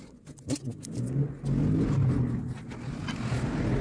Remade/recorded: recorded